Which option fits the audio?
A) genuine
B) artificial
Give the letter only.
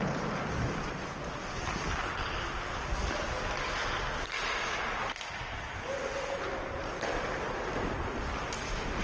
A